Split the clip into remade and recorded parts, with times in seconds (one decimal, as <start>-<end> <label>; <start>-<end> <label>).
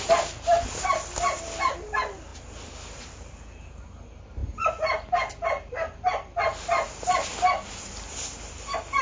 0.0-9.0 recorded